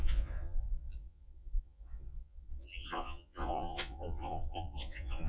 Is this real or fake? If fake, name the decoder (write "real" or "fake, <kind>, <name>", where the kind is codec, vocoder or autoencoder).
fake, vocoder, Vocos